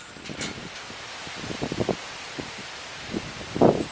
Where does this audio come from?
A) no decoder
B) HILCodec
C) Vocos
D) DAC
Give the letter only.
A